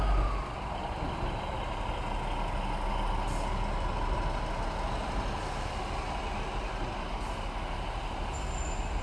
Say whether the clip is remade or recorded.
recorded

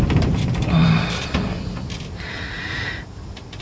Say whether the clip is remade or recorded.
recorded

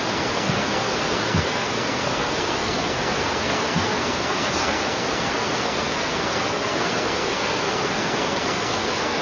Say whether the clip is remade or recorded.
remade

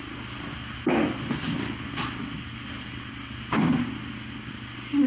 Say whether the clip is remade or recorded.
recorded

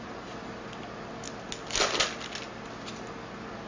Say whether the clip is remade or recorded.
recorded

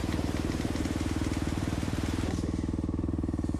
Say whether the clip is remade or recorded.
recorded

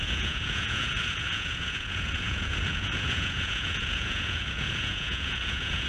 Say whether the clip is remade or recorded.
remade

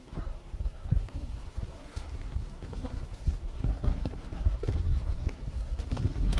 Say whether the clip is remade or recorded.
remade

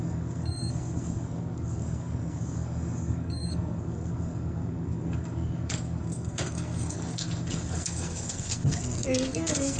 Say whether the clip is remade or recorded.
remade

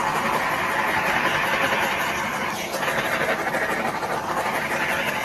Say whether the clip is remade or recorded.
recorded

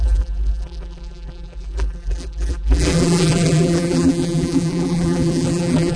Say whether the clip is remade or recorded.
remade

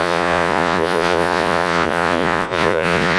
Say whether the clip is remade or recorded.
remade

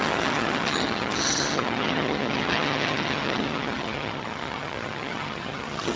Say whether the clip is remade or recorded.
remade